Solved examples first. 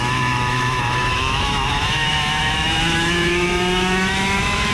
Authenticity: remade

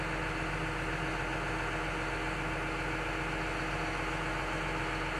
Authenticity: recorded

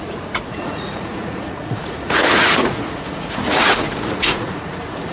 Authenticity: remade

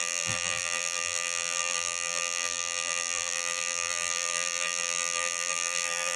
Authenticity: remade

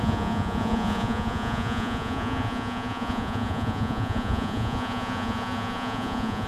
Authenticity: remade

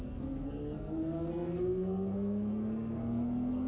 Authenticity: remade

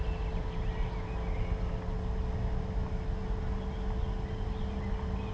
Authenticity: recorded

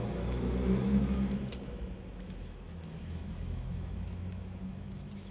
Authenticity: remade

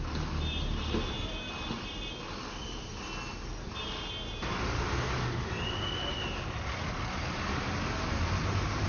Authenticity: recorded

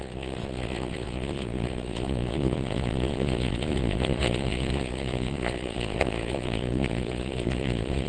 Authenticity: remade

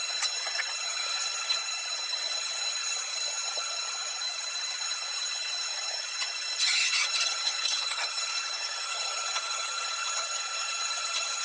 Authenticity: remade